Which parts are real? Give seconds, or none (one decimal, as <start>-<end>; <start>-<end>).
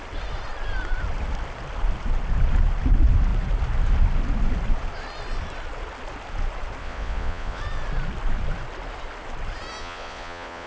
0.0-6.8; 7.6-9.8